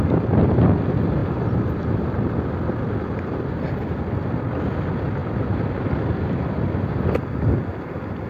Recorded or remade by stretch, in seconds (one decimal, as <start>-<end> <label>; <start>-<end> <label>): 0.0-5.2 recorded; 5.2-7.0 remade; 7.0-8.3 recorded